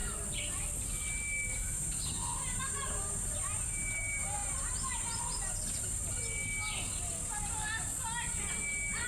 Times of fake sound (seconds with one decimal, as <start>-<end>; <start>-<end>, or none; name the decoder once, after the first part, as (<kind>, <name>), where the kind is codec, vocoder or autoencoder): none